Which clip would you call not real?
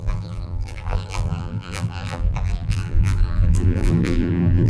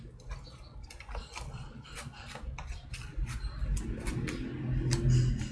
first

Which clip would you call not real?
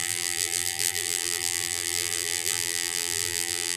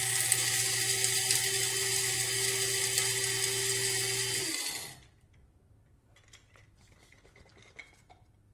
first